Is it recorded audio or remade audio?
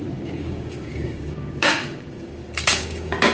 remade